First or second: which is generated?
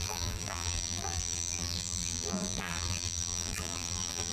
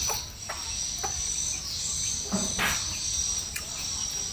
first